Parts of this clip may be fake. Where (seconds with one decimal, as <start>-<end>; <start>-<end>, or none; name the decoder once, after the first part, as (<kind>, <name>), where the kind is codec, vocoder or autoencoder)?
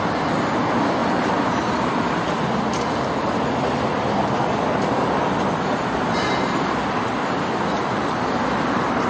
none